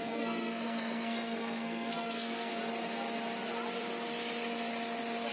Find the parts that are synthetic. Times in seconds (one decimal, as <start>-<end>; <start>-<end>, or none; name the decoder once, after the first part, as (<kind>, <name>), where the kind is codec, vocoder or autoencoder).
0.0-2.5 (codec, SNAC)